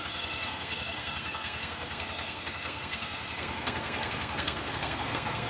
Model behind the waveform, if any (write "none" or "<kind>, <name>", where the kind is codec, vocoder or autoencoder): codec, SNAC